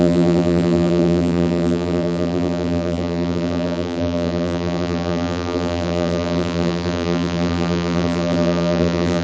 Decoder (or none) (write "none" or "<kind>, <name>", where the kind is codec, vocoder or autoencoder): vocoder, BigVGAN v2